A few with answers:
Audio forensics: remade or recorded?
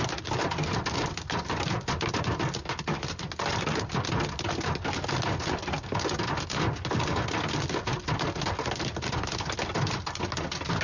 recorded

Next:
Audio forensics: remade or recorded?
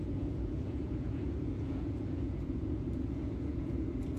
remade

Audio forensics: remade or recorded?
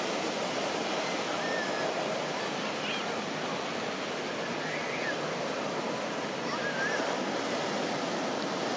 recorded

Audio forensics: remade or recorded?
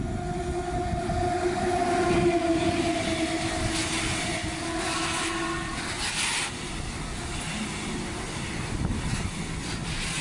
recorded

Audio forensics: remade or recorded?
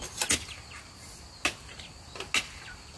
recorded